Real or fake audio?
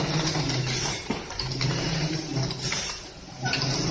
real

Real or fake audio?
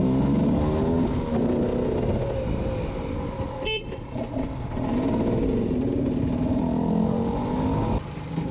real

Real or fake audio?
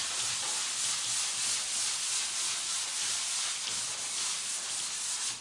real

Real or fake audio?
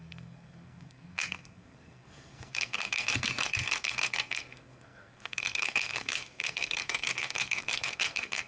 fake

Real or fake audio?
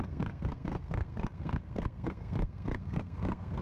fake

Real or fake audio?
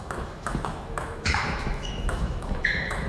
fake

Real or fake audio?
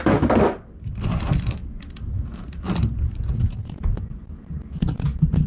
real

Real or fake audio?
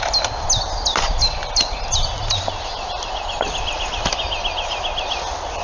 real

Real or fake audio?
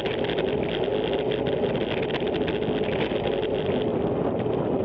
real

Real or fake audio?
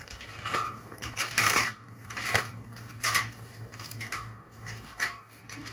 fake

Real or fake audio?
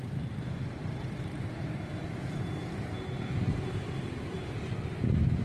real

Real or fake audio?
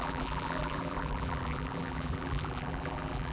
fake